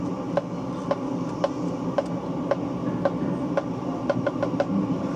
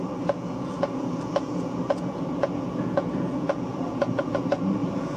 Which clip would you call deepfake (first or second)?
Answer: second